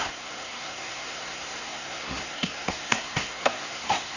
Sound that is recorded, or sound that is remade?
remade